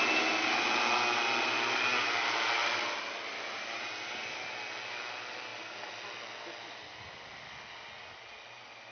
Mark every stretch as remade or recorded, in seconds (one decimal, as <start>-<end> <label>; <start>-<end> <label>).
0.0-8.9 recorded